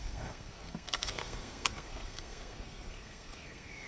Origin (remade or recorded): remade